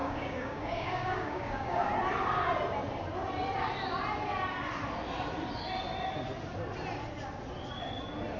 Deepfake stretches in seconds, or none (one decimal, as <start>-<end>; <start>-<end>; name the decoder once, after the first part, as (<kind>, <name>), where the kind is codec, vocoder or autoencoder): 0.0-1.9 (codec, DAC)